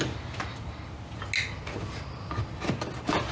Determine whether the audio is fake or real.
real